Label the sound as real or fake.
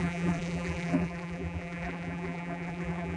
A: fake